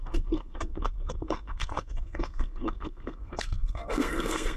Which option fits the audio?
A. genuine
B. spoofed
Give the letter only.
B